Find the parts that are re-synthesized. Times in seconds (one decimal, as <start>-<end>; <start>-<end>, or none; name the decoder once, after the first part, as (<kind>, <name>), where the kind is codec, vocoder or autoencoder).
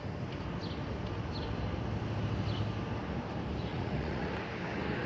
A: 3.7-4.3 (vocoder, Vocos)